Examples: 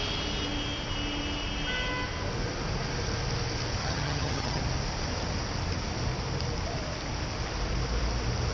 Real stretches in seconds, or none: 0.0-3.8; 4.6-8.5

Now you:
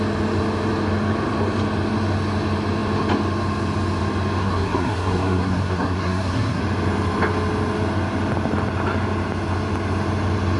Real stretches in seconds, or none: 0.0-4.4; 6.6-10.6

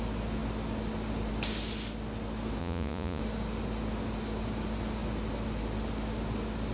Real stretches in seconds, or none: 0.0-2.6; 3.2-6.7